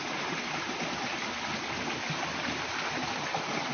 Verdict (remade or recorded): recorded